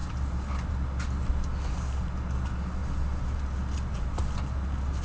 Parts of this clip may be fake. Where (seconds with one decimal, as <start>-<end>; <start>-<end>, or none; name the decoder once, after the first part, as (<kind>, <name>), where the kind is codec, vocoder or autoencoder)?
none